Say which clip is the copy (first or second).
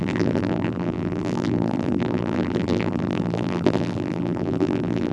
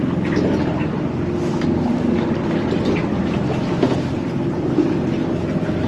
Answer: first